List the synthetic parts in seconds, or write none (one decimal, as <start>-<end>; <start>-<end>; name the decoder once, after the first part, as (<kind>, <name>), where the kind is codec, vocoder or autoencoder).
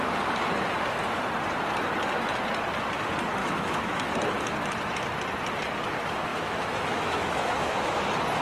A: 3.4-4.1 (autoencoder, DAC-VAE); 6.3-8.0